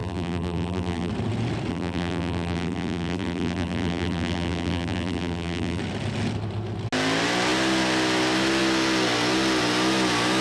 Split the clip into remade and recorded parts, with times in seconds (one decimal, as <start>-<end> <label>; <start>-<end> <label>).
0.0-1.1 remade; 1.1-1.7 recorded; 1.7-5.8 remade; 5.8-10.4 recorded